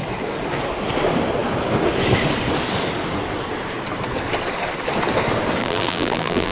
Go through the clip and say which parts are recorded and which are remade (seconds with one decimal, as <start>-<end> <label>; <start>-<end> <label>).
0.0-5.6 recorded; 5.6-6.5 remade